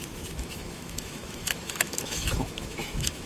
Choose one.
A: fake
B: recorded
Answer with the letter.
A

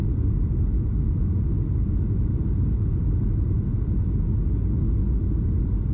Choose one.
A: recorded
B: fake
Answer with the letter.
A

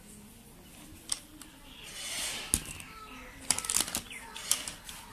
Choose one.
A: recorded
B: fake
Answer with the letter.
A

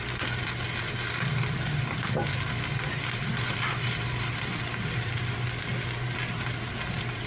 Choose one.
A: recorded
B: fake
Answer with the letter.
A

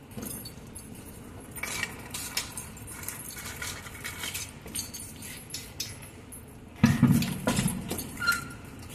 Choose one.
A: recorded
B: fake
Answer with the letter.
A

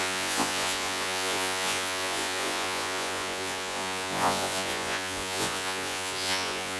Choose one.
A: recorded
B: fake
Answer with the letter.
B